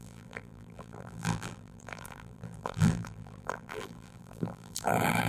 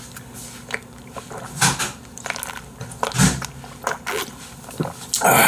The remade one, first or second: first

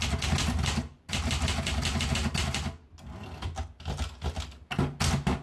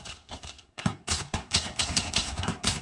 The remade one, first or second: second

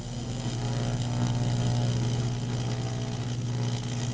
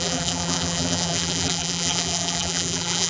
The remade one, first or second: second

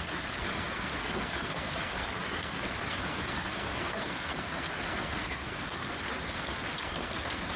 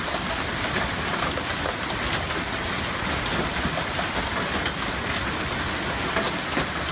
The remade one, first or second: first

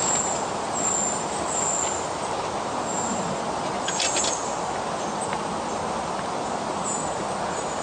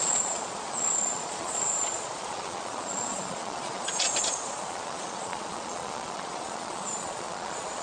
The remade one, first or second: second